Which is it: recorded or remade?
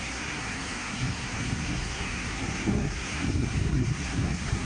remade